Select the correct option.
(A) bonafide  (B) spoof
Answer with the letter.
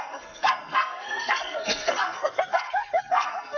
B